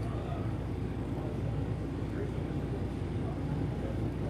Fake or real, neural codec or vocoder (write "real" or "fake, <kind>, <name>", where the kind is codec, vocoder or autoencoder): fake, codec, DAC